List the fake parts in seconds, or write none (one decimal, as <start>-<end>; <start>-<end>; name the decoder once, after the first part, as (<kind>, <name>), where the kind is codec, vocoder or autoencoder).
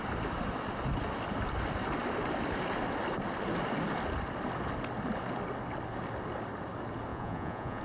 7.1-7.8 (vocoder, Vocos)